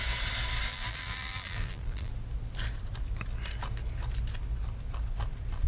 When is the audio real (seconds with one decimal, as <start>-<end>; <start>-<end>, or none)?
0.0-0.7; 2.1-5.7